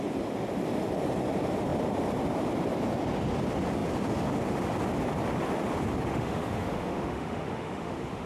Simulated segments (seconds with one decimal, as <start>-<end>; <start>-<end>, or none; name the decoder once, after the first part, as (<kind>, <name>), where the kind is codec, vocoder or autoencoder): 6.1-8.3 (autoencoder, DAC-VAE)